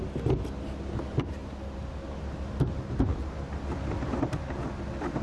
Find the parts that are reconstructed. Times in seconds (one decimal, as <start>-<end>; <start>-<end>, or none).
none